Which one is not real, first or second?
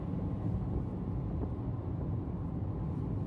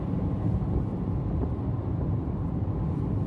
second